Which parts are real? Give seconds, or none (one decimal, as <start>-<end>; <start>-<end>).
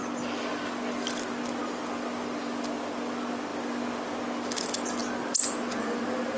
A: 0.0-6.4